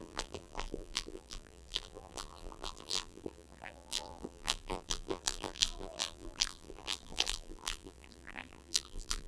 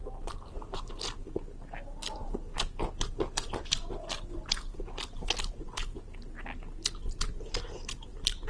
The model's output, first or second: first